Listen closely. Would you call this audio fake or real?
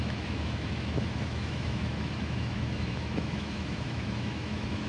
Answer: fake